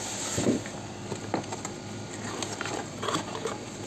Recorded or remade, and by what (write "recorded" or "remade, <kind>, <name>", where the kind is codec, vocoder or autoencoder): recorded